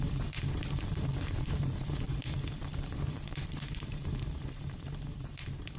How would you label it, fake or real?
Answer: fake